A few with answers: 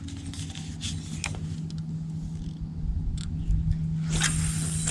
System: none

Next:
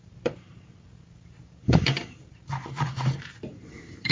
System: vocoder, BigVGAN v2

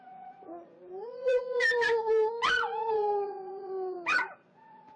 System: vocoder, Vocos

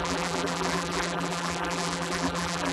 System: vocoder, BigVGAN v2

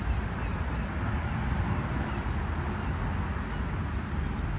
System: none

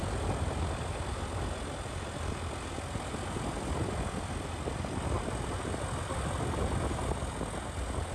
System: none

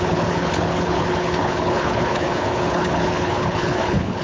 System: codec, HILCodec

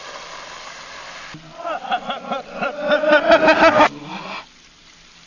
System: none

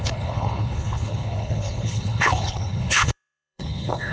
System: codec, HILCodec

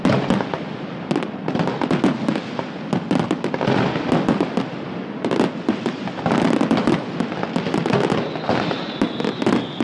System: none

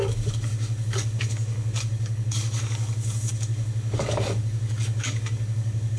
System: codec, DAC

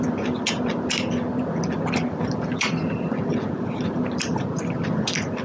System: none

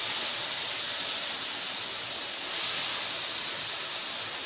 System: none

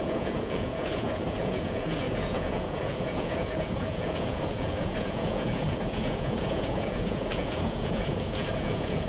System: vocoder, Vocos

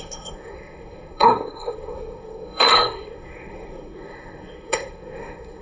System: codec, SNAC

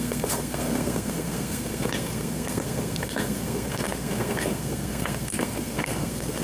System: codec, SNAC